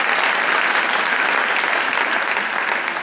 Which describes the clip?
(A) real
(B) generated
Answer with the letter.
A